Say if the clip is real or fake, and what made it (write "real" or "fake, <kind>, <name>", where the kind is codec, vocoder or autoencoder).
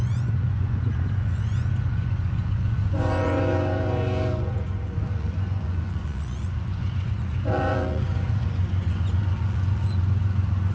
fake, vocoder, Vocos